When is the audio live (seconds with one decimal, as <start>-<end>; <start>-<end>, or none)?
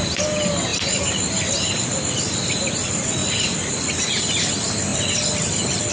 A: 0.0-5.9